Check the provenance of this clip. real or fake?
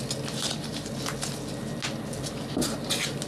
real